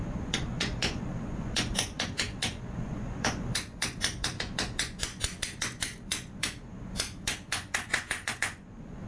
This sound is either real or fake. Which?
fake